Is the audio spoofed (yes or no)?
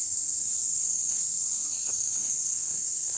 yes